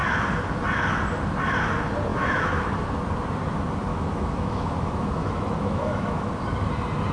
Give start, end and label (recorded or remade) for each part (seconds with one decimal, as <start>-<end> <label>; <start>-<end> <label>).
0.0-2.1 recorded; 2.1-2.7 remade; 2.7-3.9 recorded; 3.9-6.3 remade; 6.3-7.1 recorded